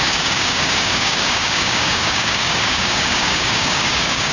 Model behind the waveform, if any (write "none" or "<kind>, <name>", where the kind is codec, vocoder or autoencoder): codec, DAC